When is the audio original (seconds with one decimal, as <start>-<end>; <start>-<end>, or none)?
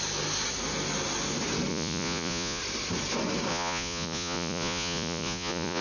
0.0-1.7; 2.6-3.5